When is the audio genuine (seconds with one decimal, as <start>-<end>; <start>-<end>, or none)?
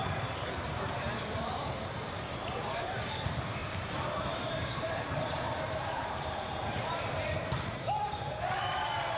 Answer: none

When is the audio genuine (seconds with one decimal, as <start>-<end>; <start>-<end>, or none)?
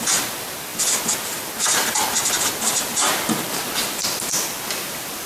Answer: 0.0-5.3